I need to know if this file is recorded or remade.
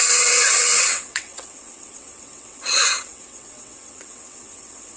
remade